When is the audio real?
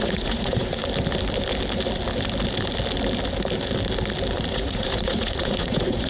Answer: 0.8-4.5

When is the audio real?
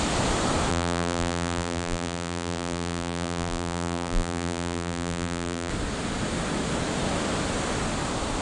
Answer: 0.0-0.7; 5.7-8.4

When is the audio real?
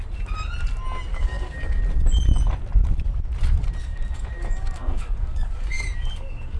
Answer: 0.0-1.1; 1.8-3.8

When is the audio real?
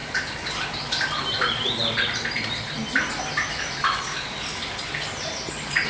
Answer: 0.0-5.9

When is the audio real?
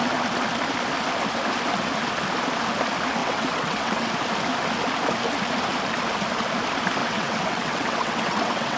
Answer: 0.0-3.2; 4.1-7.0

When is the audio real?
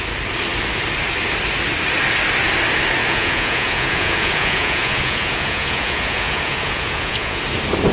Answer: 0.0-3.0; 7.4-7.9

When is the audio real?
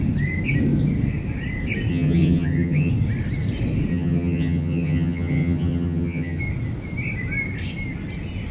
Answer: 0.0-1.9; 2.9-3.9; 6.4-8.5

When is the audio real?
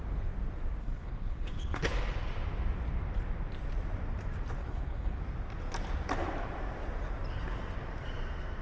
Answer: 0.0-0.8; 1.9-4.6; 5.2-8.6